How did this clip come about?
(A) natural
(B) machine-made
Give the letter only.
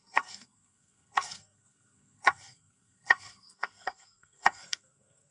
B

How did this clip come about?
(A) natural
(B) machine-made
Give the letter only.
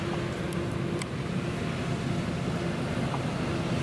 A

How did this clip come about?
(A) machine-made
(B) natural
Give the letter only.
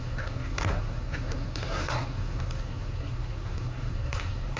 A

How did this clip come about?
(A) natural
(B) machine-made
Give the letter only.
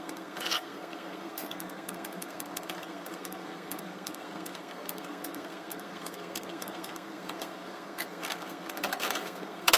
B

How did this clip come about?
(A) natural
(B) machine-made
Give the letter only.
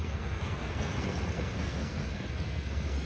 B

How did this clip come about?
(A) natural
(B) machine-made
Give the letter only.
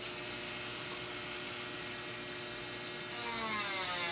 A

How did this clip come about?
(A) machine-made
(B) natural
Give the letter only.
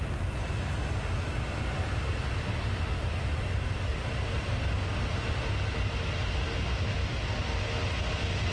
B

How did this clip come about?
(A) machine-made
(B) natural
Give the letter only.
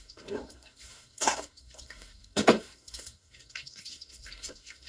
A